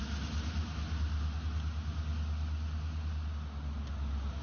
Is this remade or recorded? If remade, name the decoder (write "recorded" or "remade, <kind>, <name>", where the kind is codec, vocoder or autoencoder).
recorded